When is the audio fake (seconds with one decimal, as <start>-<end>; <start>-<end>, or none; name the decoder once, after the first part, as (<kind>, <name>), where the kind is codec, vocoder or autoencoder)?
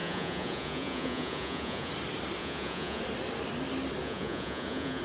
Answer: 0.0-1.9 (vocoder, Vocos); 2.4-3.0; 4.0-5.0